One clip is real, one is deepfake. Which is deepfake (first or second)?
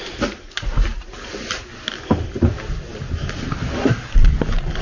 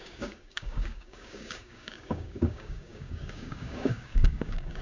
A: second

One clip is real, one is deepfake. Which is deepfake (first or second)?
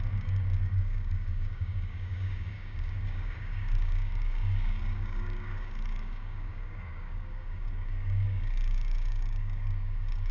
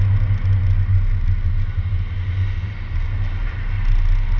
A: first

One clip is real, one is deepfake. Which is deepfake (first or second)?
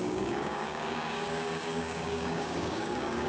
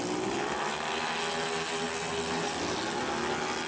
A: first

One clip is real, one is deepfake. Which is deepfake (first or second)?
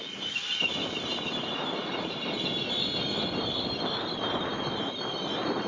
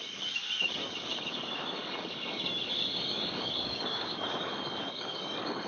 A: second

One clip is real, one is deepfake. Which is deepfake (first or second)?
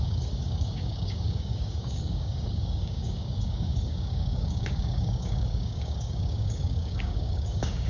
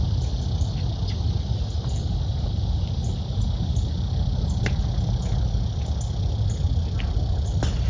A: first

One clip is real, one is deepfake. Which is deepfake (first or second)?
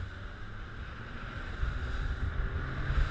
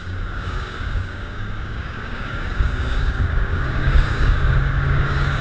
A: second